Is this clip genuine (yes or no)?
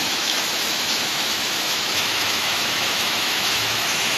no